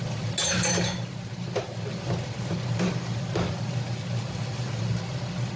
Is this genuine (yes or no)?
yes